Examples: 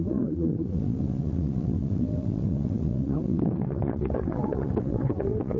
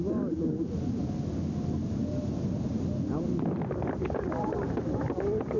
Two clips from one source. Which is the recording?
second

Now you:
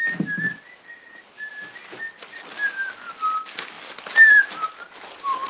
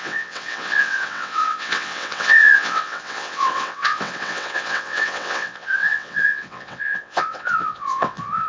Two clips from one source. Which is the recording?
first